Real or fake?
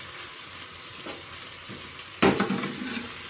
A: real